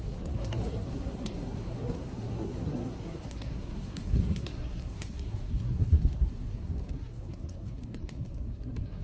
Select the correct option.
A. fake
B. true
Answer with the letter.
A